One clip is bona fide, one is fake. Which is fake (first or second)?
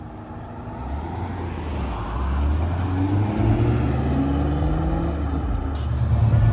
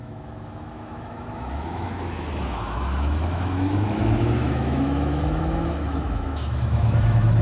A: second